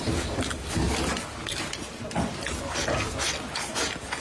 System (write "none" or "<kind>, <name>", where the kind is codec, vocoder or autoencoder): none